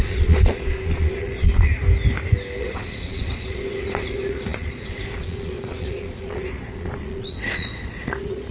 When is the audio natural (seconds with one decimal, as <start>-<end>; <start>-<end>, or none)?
1.7-2.6